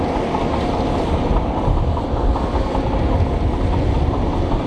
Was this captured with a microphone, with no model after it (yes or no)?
yes